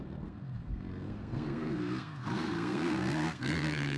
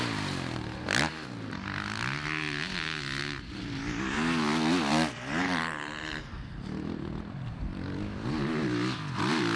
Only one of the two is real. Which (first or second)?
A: second